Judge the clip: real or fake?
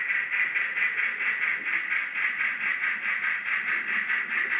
real